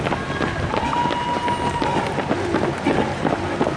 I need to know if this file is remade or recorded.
recorded